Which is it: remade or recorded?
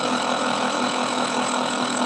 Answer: remade